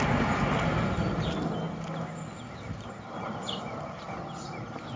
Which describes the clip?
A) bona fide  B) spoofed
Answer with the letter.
A